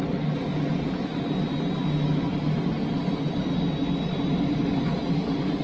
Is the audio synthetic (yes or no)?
no